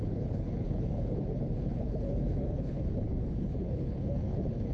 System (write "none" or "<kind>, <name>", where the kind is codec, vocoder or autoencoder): codec, HILCodec